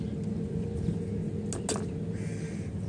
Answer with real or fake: real